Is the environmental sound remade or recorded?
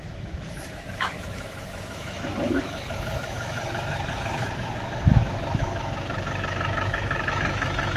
remade